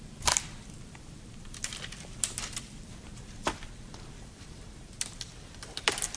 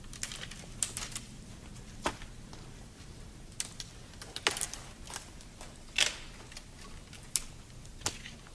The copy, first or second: first